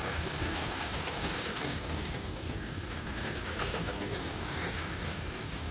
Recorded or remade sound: remade